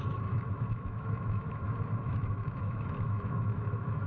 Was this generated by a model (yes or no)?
yes